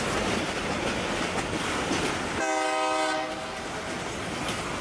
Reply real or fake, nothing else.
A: real